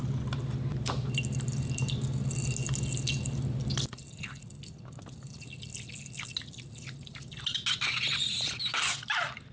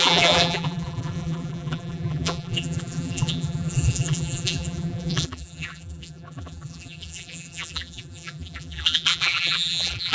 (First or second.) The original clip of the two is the first